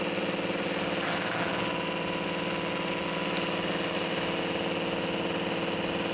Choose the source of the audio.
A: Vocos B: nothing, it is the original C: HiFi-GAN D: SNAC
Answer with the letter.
B